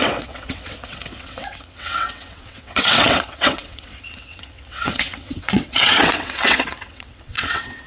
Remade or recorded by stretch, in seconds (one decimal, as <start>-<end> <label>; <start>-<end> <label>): 0.0-7.9 remade